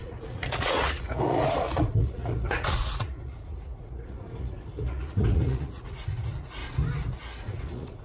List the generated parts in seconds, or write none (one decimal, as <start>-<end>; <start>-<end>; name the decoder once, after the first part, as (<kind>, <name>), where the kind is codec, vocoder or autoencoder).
0.0-6.6 (vocoder, Vocos); 7.4-8.0